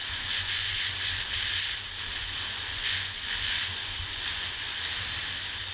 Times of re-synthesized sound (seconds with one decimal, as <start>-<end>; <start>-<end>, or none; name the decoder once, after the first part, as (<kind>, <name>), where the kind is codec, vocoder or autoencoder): 0.0-1.2 (vocoder, Vocos); 2.2-4.8